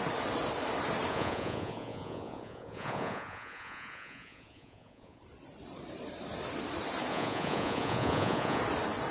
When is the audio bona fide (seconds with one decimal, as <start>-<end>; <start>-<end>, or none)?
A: 0.0-1.1; 5.2-7.1; 8.6-9.1